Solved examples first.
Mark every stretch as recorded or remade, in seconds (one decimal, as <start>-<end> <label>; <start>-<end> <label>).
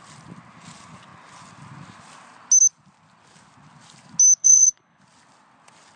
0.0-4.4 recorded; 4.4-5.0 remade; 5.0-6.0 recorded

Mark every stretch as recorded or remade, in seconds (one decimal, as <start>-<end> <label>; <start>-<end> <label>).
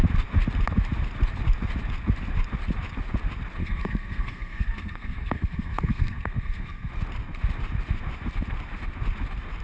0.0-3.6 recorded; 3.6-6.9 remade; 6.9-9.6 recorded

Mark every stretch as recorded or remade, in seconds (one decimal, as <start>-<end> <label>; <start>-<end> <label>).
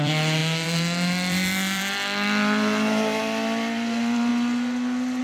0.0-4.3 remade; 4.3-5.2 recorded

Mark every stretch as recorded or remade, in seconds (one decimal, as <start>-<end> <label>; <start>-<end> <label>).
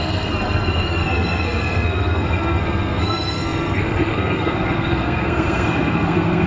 0.0-6.5 remade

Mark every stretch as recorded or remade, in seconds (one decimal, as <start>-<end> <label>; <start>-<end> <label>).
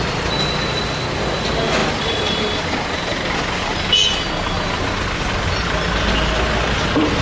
0.0-7.2 recorded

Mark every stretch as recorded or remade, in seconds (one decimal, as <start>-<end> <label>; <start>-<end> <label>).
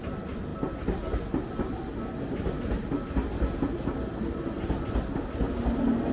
0.0-6.1 recorded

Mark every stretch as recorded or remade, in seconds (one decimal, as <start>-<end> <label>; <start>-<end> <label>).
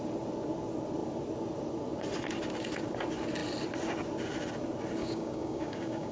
0.0-5.0 recorded; 5.0-6.1 remade